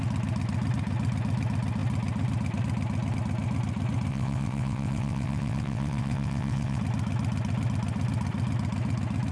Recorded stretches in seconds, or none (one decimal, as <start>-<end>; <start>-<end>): 0.0-4.1; 6.8-9.3